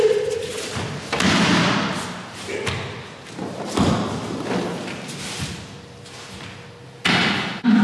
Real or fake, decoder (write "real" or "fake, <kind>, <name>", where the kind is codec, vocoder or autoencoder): real